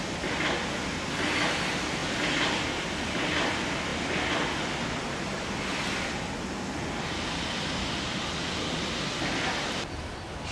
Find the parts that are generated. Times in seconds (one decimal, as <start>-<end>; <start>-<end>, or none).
none